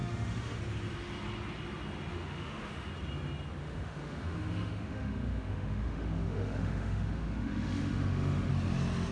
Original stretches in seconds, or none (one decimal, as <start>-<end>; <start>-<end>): 0.6-2.1; 2.9-3.6; 8.5-9.1

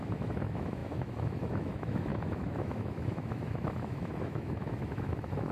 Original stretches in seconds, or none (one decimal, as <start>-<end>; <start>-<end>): none

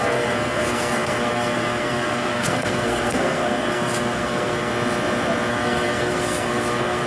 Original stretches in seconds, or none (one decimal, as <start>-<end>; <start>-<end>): 4.7-5.5

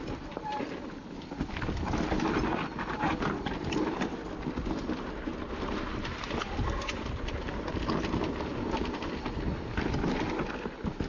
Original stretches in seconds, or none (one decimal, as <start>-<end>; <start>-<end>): 0.0-11.1

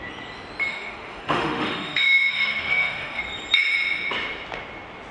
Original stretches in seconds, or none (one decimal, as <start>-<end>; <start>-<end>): 0.0-0.7; 3.2-5.1